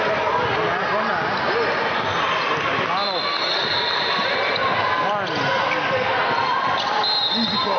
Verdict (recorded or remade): recorded